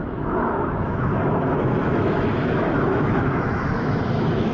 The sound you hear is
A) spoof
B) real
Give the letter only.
A